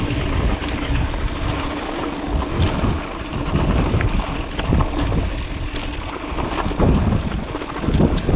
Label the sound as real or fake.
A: real